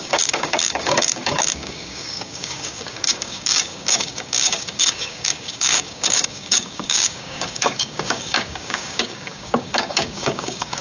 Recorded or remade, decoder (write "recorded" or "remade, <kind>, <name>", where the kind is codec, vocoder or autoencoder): remade, codec, DAC